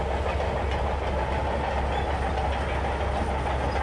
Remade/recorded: recorded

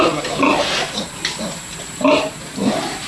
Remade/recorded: remade